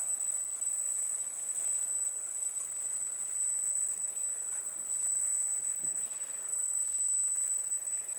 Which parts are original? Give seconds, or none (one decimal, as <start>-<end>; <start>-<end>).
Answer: 0.0-8.2